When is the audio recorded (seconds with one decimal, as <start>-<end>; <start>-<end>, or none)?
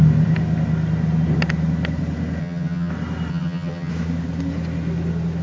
0.0-2.4; 2.9-3.3; 3.9-5.4